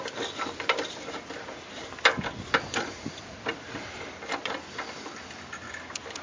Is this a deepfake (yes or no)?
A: no